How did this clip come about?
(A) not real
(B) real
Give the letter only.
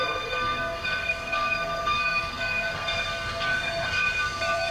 A